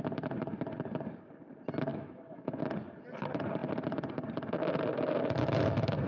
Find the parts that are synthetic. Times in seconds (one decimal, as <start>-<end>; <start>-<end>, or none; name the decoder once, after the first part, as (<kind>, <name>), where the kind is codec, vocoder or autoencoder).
1.9-2.6 (autoencoder, DAC-VAE)